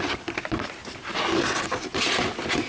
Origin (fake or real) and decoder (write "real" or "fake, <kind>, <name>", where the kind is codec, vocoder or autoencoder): real